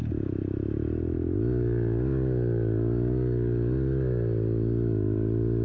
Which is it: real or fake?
real